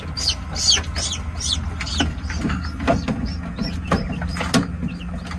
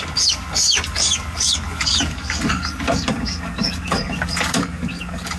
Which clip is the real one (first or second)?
first